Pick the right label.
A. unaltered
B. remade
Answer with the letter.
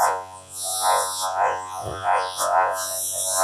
B